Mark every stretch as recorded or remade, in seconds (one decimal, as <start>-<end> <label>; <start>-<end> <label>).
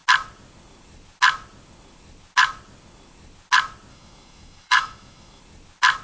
0.0-3.9 recorded; 3.9-5.4 remade; 5.4-6.0 recorded